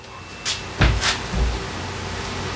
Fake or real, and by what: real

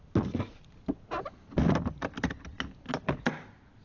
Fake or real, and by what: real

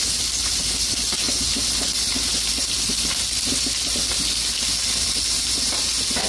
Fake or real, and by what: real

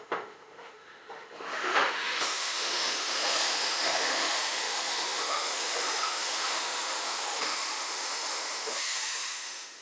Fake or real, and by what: fake, autoencoder, DAC-VAE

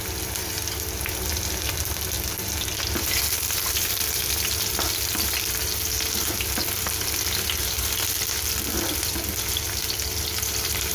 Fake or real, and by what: real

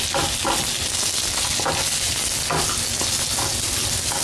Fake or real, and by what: real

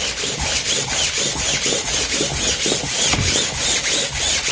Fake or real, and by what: real